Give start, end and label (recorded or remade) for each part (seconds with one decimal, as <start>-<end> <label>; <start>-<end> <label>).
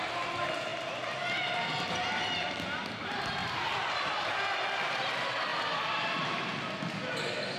0.0-3.4 recorded; 3.4-4.3 remade; 4.3-5.5 recorded; 5.5-6.0 remade; 6.0-7.6 recorded